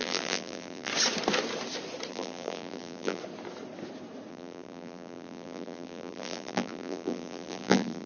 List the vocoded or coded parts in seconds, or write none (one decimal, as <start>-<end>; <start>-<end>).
0.0-0.9; 2.1-3.2; 4.3-8.1